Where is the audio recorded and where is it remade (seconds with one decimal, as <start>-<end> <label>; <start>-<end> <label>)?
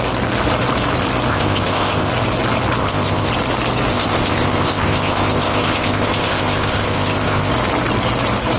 0.0-1.3 recorded; 1.3-2.1 remade; 2.1-2.8 recorded; 2.8-3.3 remade; 3.3-3.9 recorded; 3.9-7.5 remade; 7.5-8.6 recorded